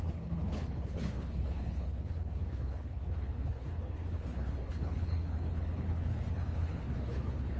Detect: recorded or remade remade